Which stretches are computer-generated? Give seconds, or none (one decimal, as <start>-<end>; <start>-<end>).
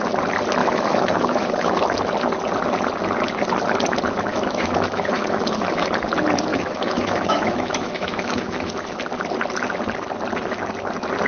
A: 0.6-1.8; 4.3-5.8; 6.5-9.0